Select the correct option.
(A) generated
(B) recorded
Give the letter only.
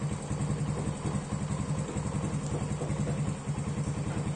B